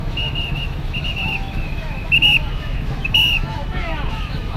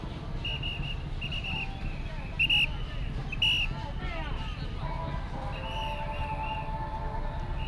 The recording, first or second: second